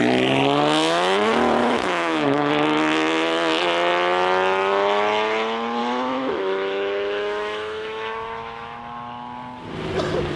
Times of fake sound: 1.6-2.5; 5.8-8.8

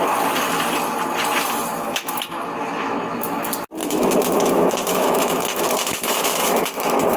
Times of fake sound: 1.7-3.4; 3.8-7.2

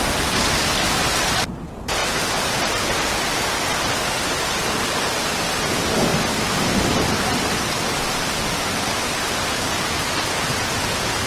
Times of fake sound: none

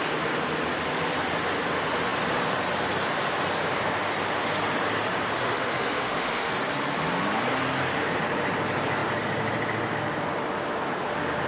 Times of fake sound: 5.4-6.5

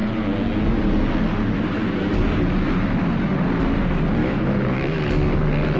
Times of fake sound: 4.2-5.1

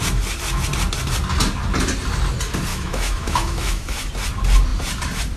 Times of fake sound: 2.7-4.1

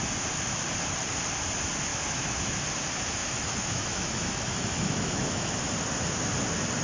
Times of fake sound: 1.9-2.6; 3.2-5.5